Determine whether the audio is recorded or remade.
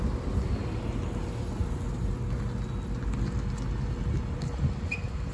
recorded